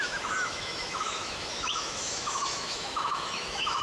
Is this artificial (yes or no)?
yes